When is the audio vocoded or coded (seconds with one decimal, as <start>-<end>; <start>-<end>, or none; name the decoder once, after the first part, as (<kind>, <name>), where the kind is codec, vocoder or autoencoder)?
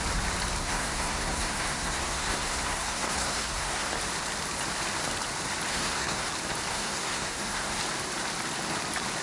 0.6-3.9 (codec, SNAC); 5.7-6.3; 6.7-7.8